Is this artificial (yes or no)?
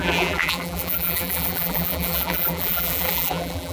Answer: yes